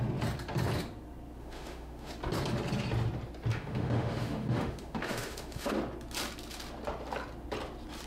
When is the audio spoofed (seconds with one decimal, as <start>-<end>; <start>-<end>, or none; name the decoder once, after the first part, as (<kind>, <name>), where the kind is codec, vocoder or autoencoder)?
1.4-2.1 (autoencoder, DAC-VAE); 3.5-5.8

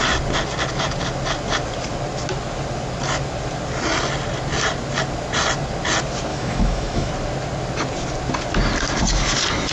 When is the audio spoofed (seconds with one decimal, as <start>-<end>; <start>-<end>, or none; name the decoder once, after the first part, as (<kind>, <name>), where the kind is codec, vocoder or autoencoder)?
6.3-7.1 (autoencoder, DAC-VAE)